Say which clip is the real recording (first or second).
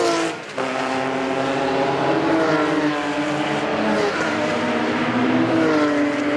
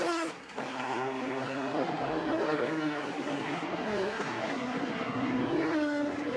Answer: first